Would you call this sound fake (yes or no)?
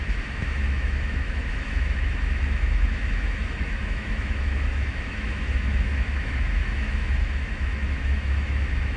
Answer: yes